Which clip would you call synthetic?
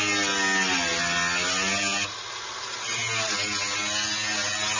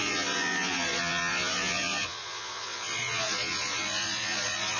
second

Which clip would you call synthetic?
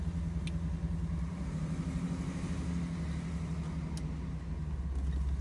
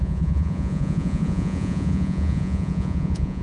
second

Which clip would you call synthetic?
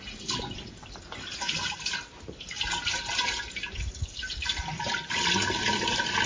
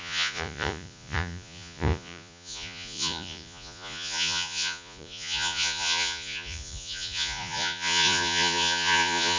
second